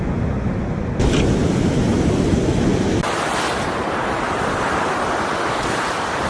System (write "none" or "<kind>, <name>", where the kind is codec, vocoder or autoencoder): none